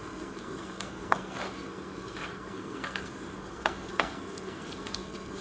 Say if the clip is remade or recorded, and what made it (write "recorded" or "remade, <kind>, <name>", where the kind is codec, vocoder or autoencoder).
remade, codec, SNAC